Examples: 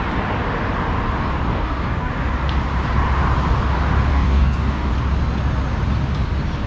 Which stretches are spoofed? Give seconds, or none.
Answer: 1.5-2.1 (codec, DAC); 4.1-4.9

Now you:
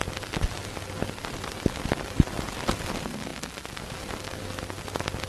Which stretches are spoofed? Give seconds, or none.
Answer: none

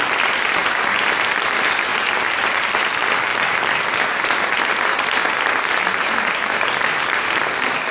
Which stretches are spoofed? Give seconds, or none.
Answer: 0.0-0.6 (vocoder, BigVGAN v2); 1.3-7.9

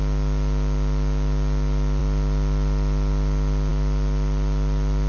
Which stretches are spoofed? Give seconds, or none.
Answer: none

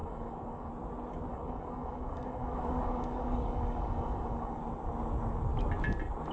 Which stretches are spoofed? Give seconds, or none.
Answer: 0.0-0.7 (codec, DAC); 1.3-4.6

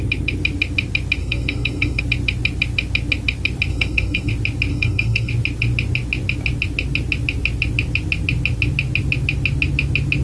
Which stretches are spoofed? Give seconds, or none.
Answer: 1.2-2.0 (codec, SNAC); 3.7-4.3; 4.7-5.3

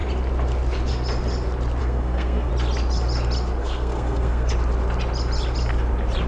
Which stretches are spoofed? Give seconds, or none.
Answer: 1.8-2.5 (codec, SNAC); 3.6-4.5